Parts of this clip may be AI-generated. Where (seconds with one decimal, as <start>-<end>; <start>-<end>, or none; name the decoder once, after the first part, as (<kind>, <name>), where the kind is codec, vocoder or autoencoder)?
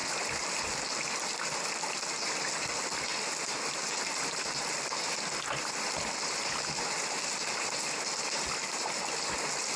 none